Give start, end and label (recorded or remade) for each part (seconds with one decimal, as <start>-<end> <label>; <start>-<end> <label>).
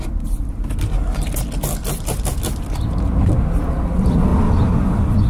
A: 0.0-5.3 recorded